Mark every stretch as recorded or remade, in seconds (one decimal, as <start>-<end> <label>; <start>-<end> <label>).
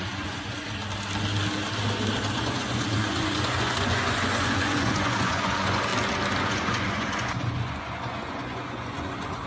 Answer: 0.0-0.8 remade; 0.8-2.3 recorded; 2.3-5.9 remade; 5.9-6.4 recorded; 6.4-9.5 remade